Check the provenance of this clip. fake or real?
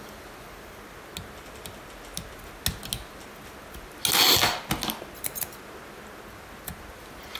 real